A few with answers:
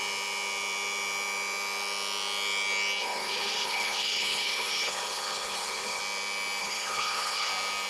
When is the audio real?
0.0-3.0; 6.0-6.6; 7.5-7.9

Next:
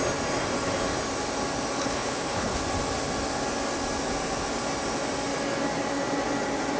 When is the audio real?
0.0-1.8; 2.6-6.8

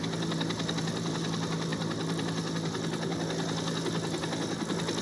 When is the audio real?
0.0-5.0

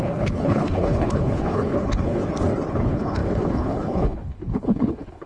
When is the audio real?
2.2-2.7